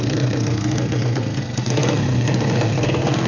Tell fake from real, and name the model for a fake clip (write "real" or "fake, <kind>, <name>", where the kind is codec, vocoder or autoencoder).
fake, codec, SNAC